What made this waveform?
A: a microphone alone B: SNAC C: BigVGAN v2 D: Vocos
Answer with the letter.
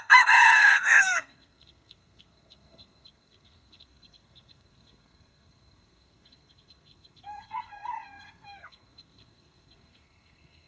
B